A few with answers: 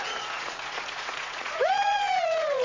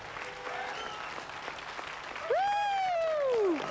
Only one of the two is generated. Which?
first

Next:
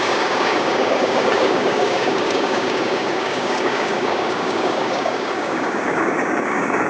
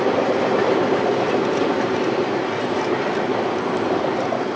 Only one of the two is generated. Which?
first